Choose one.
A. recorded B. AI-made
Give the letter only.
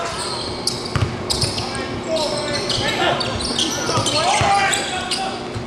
A